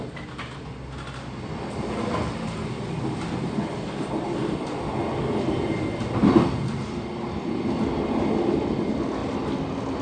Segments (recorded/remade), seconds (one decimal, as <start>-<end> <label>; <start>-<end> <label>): 0.0-10.0 recorded